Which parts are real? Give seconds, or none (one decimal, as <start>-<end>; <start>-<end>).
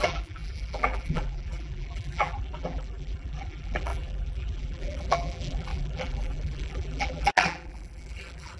none